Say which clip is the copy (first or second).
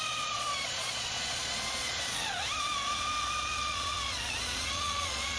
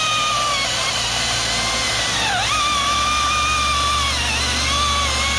first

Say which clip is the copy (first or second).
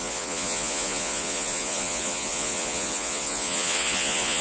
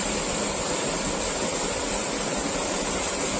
first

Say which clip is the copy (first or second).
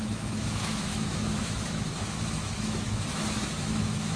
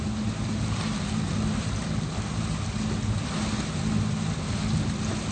first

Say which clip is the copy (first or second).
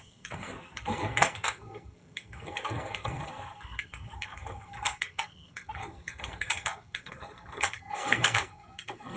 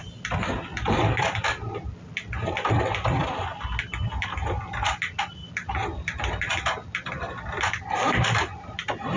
first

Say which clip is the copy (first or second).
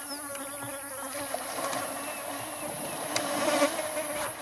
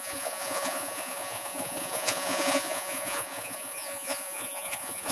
second